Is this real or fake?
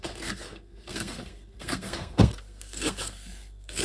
fake